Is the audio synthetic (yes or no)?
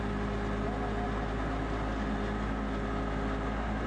no